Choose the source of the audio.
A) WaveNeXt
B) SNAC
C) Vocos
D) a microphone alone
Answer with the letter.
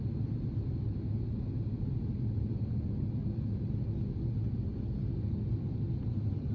D